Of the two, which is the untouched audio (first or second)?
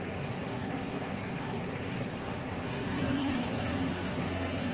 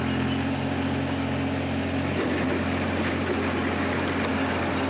second